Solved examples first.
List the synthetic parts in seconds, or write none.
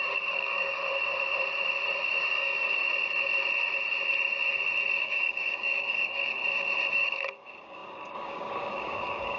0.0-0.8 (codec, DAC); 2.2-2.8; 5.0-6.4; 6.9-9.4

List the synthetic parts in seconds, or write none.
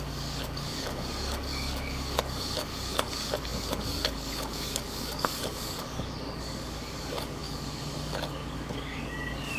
0.0-9.6 (codec, DAC)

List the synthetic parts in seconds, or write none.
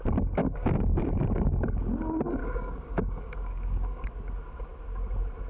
0.4-1.1 (codec, DAC); 2.4-4.1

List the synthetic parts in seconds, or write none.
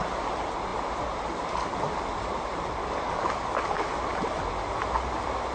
2.8-4.0 (codec, DAC)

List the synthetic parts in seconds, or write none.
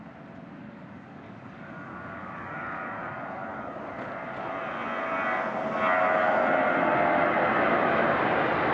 0.6-3.8 (codec, DAC)